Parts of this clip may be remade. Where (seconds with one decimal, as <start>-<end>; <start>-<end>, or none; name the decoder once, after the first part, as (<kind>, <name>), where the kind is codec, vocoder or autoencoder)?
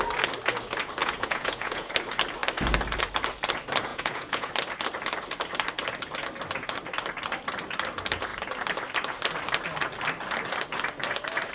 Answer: 1.0-1.9 (vocoder, Vocos); 3.9-4.5